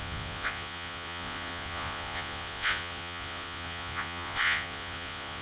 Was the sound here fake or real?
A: fake